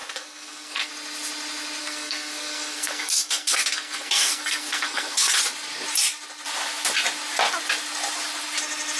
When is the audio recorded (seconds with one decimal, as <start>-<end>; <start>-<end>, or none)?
0.9-1.8; 5.3-9.0